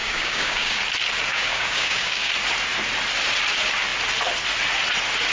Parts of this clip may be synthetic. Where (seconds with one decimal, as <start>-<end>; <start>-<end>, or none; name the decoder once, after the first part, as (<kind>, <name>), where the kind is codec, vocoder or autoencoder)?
0.0-0.8 (codec, DAC); 1.3-2.3